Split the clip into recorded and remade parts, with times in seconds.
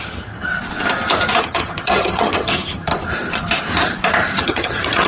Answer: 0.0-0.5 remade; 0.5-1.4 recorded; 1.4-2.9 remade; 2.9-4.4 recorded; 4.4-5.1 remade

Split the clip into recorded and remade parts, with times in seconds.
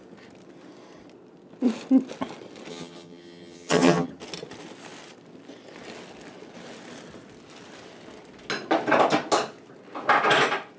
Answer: 0.0-2.7 recorded; 2.7-4.1 remade; 4.1-10.8 recorded